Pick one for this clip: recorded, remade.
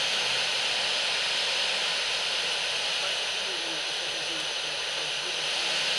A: recorded